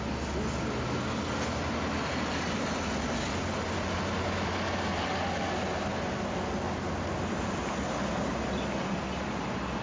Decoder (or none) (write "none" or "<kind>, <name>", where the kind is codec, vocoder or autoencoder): none